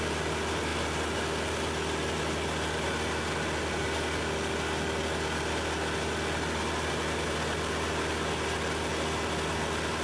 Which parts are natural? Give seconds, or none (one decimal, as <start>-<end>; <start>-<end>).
0.0-10.0